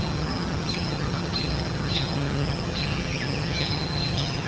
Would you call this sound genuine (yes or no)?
no